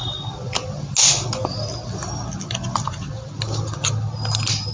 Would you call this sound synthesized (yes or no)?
no